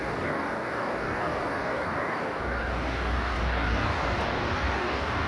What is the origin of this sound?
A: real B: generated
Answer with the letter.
B